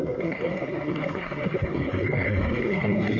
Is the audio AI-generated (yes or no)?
yes